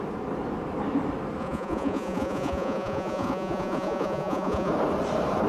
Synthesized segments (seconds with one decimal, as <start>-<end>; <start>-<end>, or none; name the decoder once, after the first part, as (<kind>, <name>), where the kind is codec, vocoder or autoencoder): 1.4-4.7 (vocoder, Vocos)